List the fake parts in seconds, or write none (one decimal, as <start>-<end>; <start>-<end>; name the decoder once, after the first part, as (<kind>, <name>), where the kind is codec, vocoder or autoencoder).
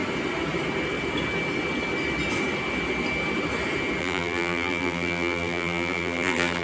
4.0-6.6 (vocoder, BigVGAN v2)